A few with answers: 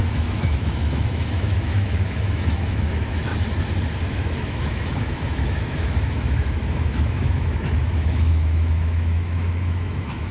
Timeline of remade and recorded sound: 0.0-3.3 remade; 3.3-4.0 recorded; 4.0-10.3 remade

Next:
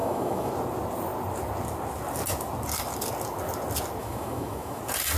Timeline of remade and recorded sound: 0.0-0.5 remade; 0.5-4.0 recorded; 4.0-4.8 remade; 4.8-5.2 recorded

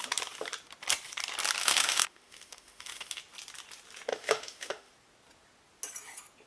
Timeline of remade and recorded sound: 0.0-1.6 recorded; 1.6-3.2 remade; 3.2-4.1 recorded; 4.1-4.9 remade; 4.9-6.5 recorded

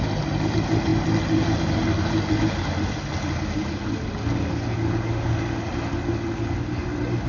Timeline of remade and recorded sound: 0.0-7.3 recorded

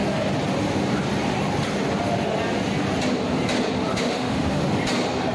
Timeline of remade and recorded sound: 0.0-3.9 recorded; 3.9-4.6 remade; 4.6-5.3 recorded

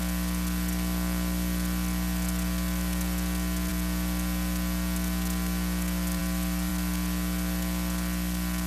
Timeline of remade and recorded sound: 0.0-8.7 recorded